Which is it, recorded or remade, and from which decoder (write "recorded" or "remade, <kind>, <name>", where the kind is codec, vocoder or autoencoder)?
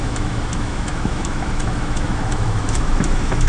remade, autoencoder, DAC-VAE